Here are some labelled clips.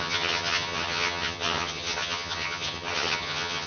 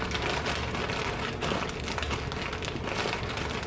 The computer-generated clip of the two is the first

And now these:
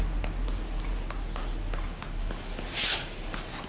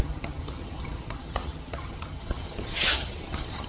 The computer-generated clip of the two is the second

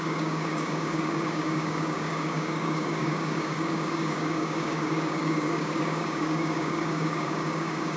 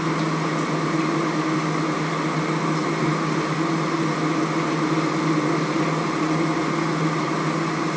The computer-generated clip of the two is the first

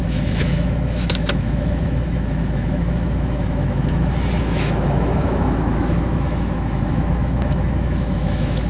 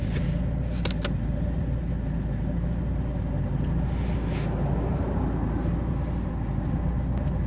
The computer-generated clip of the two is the first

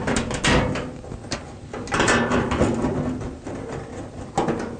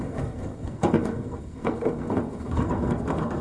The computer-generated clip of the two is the second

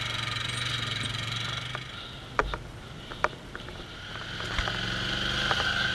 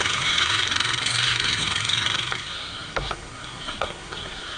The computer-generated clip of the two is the second